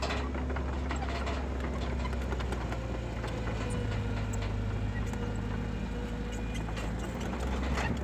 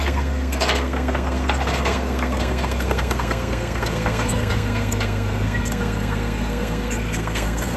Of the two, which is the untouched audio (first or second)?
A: first